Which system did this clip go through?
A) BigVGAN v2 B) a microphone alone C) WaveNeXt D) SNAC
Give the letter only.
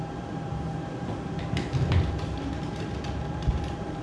A